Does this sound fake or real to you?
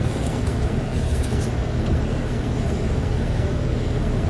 fake